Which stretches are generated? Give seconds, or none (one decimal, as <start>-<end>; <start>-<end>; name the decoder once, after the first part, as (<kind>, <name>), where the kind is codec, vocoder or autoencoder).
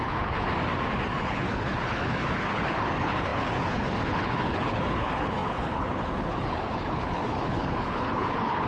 0.0-0.5 (codec, HILCodec); 1.1-8.7